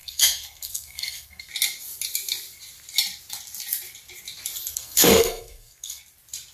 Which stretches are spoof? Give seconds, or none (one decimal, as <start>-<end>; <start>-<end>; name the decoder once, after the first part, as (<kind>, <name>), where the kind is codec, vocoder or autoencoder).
0.0-1.5 (codec, SNAC); 4.7-6.0